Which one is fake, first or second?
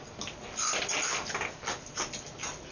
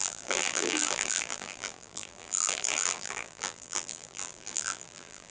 second